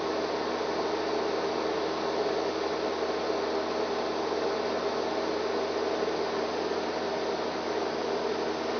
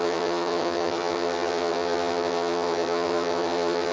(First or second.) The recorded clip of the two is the first